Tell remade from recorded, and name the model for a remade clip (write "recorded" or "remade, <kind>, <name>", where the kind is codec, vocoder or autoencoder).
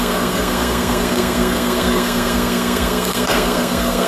remade, codec, SNAC